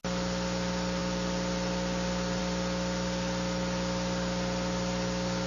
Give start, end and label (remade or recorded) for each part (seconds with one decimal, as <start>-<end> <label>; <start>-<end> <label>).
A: 0.0-5.5 recorded